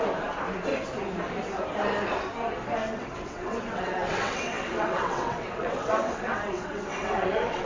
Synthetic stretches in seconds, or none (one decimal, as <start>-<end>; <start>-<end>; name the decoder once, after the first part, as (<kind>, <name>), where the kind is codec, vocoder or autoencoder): 2.8-7.7 (vocoder, WaveNeXt)